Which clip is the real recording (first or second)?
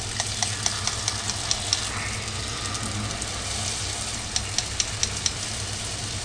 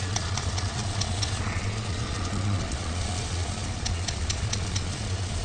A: first